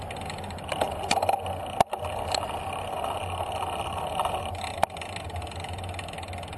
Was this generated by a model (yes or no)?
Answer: no